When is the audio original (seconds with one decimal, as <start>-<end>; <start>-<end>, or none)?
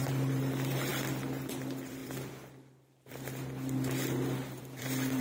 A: none